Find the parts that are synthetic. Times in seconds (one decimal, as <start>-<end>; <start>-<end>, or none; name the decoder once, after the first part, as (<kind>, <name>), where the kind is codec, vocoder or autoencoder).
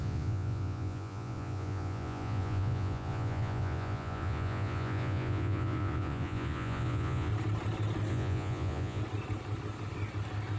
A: 0.0-7.3 (vocoder, Vocos); 8.1-9.0